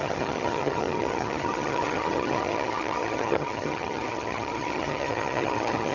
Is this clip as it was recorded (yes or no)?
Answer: no